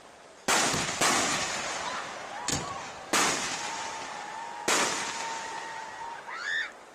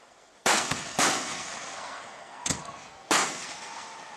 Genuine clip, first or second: first